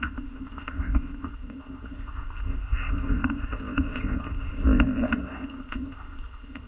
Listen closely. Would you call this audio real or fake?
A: fake